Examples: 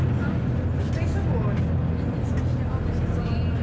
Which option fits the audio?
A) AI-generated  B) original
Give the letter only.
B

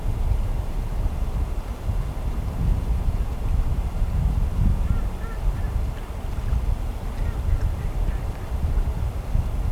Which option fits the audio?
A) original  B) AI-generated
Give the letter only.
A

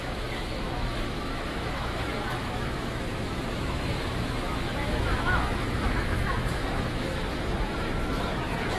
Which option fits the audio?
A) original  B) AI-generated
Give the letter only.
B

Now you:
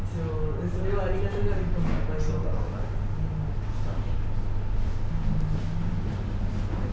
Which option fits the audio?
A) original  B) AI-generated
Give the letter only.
A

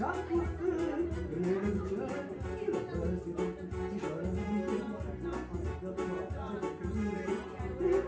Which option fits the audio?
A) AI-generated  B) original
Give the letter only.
B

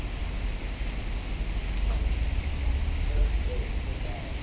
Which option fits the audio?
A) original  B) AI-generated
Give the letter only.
A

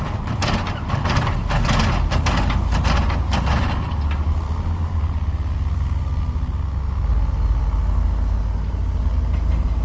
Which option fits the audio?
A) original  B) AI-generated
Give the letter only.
A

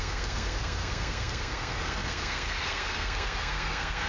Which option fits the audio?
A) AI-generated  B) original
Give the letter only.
A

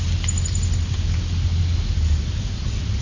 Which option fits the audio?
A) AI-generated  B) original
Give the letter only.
B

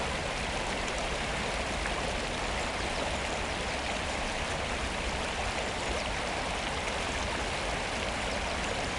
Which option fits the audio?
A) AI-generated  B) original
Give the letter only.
B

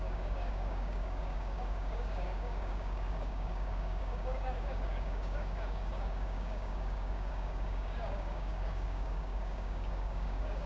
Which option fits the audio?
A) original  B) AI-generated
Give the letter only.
B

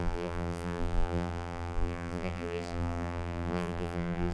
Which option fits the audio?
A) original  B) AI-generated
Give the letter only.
B